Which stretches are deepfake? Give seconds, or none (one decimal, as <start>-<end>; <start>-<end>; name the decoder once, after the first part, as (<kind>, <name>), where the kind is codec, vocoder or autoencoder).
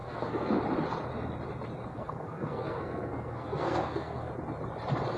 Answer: 0.0-0.6 (codec, SNAC); 1.9-4.3